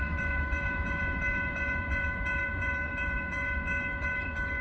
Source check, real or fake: fake